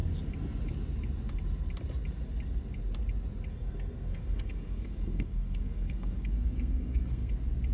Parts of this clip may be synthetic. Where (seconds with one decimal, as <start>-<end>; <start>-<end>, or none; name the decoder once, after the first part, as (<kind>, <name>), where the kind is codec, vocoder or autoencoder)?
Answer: 3.5-7.3 (codec, SNAC)